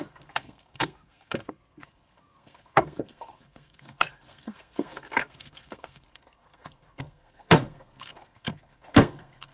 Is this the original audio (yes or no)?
no